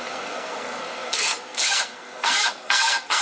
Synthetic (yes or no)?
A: yes